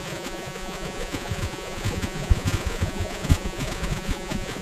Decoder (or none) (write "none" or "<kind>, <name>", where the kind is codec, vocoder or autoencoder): vocoder, Vocos